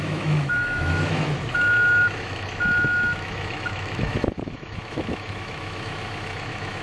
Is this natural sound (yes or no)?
no